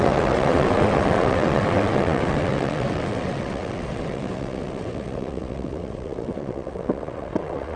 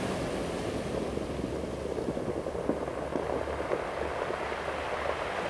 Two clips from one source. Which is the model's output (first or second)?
first